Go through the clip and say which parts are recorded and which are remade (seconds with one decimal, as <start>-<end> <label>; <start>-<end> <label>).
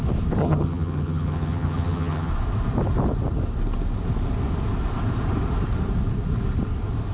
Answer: 0.0-0.4 recorded; 0.4-2.3 remade; 2.3-7.1 recorded